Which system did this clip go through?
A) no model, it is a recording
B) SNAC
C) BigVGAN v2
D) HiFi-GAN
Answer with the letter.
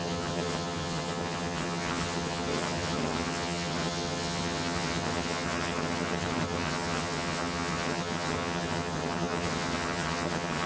D